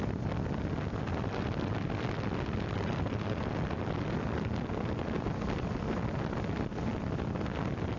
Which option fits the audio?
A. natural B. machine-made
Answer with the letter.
A